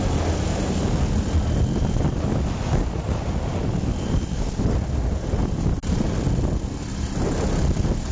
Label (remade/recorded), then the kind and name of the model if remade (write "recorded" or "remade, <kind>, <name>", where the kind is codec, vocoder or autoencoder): recorded